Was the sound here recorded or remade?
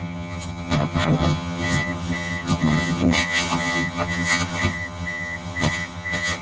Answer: remade